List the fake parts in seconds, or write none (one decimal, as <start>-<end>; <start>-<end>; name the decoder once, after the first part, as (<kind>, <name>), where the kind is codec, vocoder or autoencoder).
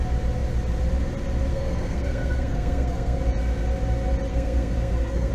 1.5-3.2 (codec, SNAC); 4.3-5.3